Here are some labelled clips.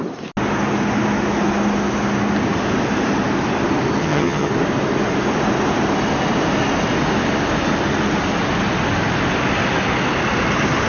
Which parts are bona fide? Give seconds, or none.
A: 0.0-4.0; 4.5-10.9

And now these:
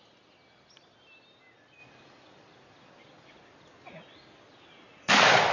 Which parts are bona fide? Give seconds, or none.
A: 0.0-5.5

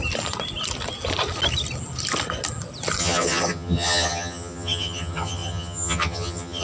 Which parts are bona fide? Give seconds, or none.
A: 0.0-3.0

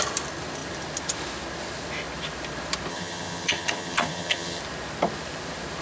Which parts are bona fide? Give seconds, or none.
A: 0.0-2.9; 4.6-5.8